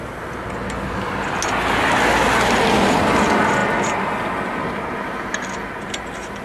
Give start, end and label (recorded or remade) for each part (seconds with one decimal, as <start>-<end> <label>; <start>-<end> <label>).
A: 0.0-6.4 recorded